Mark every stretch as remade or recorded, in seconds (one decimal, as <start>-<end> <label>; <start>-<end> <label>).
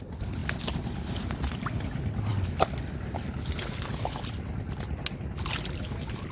0.0-6.3 recorded